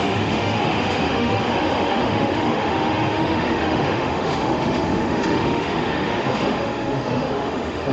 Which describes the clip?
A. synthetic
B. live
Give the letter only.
A